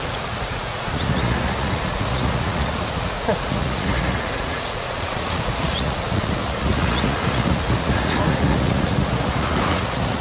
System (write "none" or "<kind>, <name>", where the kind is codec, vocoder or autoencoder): vocoder, Vocos